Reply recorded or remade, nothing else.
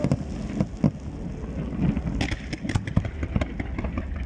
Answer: recorded